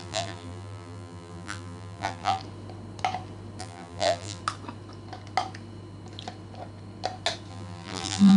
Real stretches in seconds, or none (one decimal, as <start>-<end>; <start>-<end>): 2.4-3.6; 4.4-7.5